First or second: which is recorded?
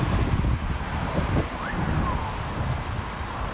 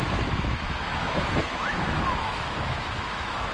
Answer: first